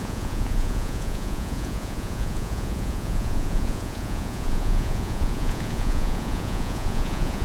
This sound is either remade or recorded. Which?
remade